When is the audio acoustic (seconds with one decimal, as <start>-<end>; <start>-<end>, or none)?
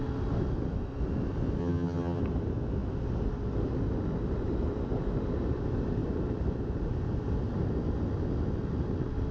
0.0-1.6; 2.2-9.3